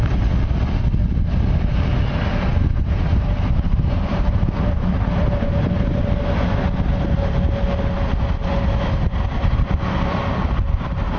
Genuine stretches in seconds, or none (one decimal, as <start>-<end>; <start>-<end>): 0.0-2.5; 6.0-11.2